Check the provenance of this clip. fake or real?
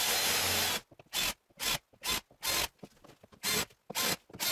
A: real